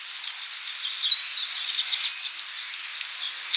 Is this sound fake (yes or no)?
no